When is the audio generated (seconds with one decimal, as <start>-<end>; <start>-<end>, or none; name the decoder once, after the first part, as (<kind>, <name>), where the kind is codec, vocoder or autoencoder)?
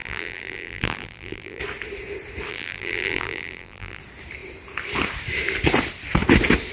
0.0-1.6 (vocoder, BigVGAN v2); 2.5-4.0